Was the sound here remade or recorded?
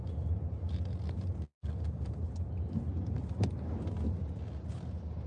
recorded